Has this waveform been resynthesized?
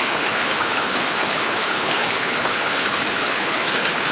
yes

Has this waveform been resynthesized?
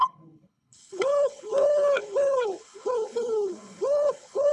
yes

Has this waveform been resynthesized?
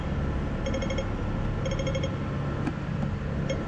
no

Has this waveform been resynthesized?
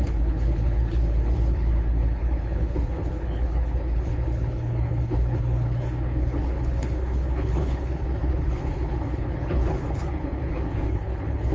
yes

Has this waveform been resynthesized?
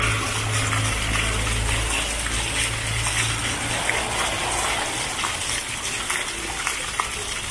no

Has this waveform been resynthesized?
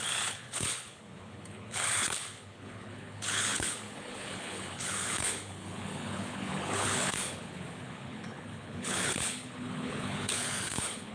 yes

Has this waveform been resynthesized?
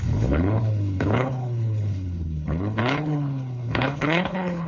yes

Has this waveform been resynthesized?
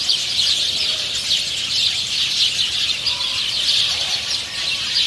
no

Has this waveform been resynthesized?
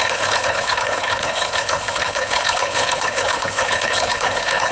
yes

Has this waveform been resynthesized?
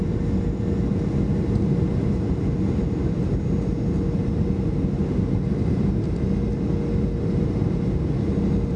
no